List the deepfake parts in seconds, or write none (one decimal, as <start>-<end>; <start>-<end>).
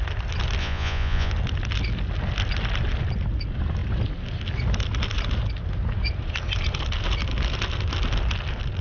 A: 0.6-1.3